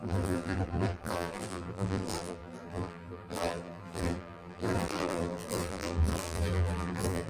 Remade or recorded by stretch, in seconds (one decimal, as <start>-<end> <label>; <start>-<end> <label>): 0.0-7.3 remade